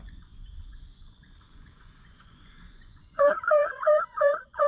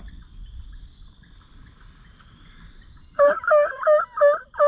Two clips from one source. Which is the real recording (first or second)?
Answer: second